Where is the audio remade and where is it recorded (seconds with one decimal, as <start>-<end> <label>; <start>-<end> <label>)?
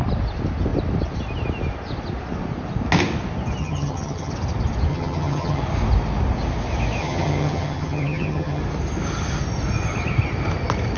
0.0-3.6 recorded; 3.6-4.3 remade; 4.3-4.9 recorded; 4.9-5.6 remade; 5.6-7.0 recorded; 7.0-8.6 remade; 8.6-11.0 recorded